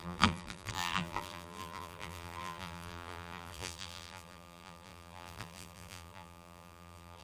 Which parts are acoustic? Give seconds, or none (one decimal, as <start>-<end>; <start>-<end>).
none